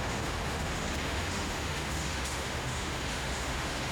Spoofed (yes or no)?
yes